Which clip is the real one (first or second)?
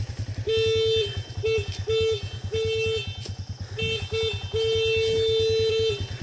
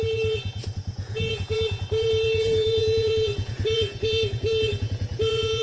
first